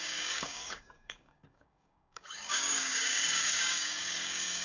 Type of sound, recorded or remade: remade